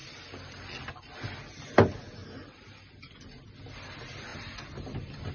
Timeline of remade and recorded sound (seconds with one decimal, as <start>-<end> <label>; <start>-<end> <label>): 0.0-2.2 recorded; 2.2-3.0 remade; 3.0-5.3 recorded

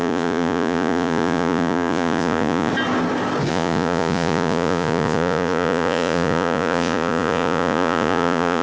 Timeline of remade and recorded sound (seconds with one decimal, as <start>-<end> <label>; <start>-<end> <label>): 0.0-2.7 remade; 2.7-3.5 recorded; 3.5-8.6 remade

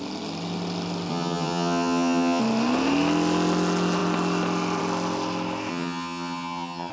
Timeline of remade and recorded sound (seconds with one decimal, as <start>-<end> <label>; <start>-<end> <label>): 0.0-1.1 recorded; 1.1-2.4 remade; 2.4-5.7 recorded; 5.7-6.9 remade

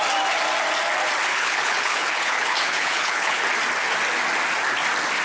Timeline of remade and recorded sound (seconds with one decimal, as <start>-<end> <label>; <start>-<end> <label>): 0.0-1.3 recorded; 1.3-3.4 remade; 3.4-5.2 recorded

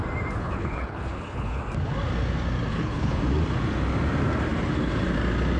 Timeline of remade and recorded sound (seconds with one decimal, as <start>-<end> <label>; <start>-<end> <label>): 0.0-0.4 recorded; 0.4-1.6 remade; 1.6-2.7 recorded; 2.7-3.2 remade; 3.2-5.6 recorded

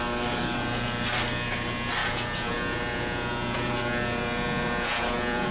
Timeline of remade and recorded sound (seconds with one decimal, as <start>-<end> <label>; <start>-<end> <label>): 0.0-2.0 recorded; 2.0-5.5 remade

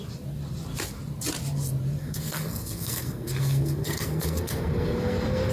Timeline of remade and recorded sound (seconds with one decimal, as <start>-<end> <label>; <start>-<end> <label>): 0.0-2.0 recorded; 2.0-5.5 remade

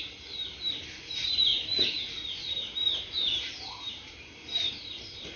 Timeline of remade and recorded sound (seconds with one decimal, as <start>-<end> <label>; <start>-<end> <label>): 0.0-5.4 remade